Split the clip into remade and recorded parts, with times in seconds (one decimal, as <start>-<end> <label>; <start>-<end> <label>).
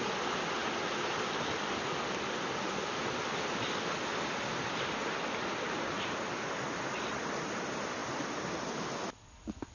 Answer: 0.0-9.7 recorded